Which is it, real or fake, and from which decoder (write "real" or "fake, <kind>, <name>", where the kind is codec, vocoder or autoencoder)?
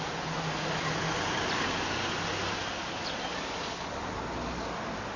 real